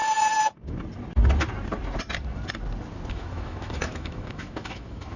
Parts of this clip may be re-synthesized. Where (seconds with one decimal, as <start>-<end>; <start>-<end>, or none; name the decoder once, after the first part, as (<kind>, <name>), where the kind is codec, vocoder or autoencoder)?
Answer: 3.1-5.2 (autoencoder, DAC-VAE)